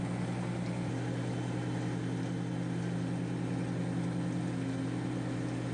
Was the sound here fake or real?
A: real